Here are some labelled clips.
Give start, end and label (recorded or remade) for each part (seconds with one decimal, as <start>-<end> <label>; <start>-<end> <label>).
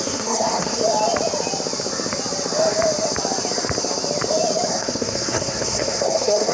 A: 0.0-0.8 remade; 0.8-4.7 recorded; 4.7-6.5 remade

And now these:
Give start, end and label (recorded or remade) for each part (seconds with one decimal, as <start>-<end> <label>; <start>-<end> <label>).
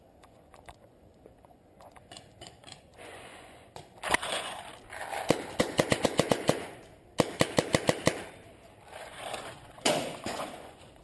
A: 0.0-4.7 remade; 4.7-5.6 recorded; 5.6-6.8 remade; 6.8-9.0 recorded; 9.0-11.0 remade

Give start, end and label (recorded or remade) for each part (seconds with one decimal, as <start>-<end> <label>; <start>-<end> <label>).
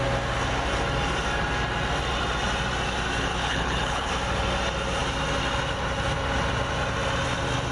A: 0.0-3.3 recorded; 3.3-4.1 remade; 4.1-7.7 recorded